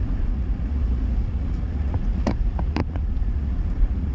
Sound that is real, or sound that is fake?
fake